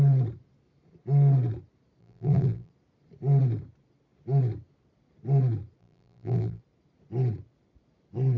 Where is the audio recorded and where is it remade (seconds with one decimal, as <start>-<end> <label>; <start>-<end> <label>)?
0.0-2.0 recorded; 2.0-2.7 remade; 2.7-5.8 recorded; 5.8-6.6 remade; 6.6-8.4 recorded